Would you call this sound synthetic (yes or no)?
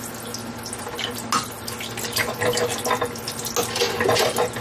no